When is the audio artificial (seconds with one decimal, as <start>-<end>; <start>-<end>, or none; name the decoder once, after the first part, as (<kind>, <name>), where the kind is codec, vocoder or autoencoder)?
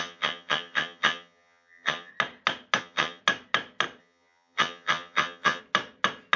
0.0-2.1 (vocoder, HiFi-GAN); 2.8-3.2; 4.0-5.6